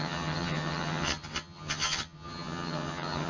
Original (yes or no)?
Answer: no